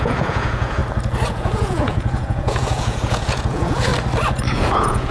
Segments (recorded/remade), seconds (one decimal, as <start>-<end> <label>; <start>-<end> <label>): 0.0-0.8 remade; 0.8-1.3 recorded; 1.3-3.9 remade; 3.9-4.5 recorded; 4.5-5.1 remade